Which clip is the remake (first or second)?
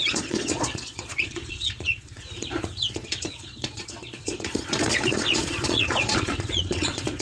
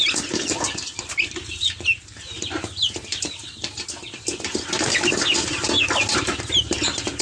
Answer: first